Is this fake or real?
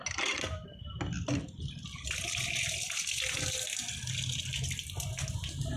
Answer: real